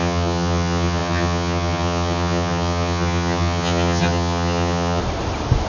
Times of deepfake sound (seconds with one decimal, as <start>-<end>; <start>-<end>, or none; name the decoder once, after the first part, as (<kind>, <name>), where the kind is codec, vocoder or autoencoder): 0.0-5.0 (vocoder, HiFi-GAN)